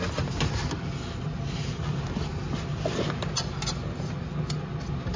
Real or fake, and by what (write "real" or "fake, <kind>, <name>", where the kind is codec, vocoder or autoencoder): real